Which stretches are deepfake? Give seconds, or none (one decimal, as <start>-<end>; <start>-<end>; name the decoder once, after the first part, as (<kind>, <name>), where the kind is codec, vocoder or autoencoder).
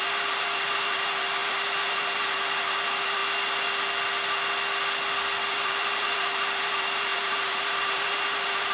0.0-3.2 (vocoder, BigVGAN v2); 5.5-8.7